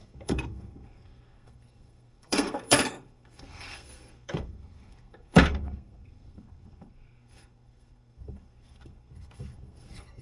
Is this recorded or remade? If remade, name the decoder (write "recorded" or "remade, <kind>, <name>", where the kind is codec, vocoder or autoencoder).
remade, codec, SNAC